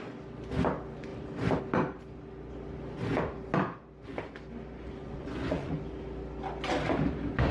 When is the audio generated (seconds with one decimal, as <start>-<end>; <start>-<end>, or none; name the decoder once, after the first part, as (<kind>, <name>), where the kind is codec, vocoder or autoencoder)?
5.0-5.7 (vocoder, Vocos)